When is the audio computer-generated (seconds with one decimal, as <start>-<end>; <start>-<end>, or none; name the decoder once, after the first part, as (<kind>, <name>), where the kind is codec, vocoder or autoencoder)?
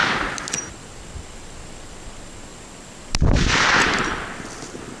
none